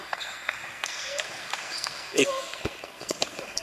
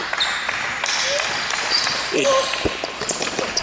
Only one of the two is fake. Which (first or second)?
first